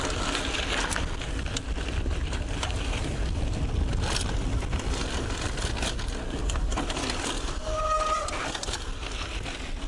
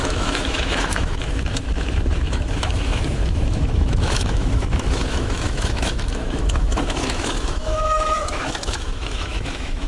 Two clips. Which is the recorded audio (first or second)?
first